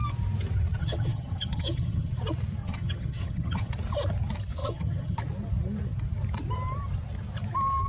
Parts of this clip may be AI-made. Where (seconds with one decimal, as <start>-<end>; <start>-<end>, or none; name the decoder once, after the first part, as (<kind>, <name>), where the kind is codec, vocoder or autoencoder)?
0.8-2.1 (vocoder, HiFi-GAN); 2.6-3.7; 4.6-5.2